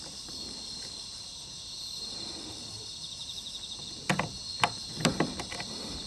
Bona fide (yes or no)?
yes